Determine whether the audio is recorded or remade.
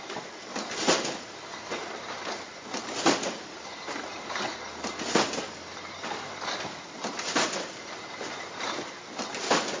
recorded